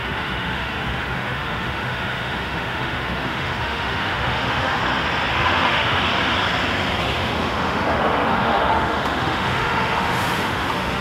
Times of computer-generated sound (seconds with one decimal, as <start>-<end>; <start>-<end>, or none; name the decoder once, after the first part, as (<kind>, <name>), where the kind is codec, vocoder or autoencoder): 0.0-4.8 (autoencoder, DAC-VAE); 5.3-6.1; 7.0-11.0